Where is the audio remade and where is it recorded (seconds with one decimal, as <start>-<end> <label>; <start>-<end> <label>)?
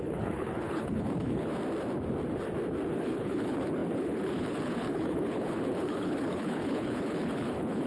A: 0.0-1.5 remade; 1.5-2.9 recorded; 2.9-7.9 remade